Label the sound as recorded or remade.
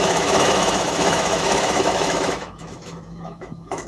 remade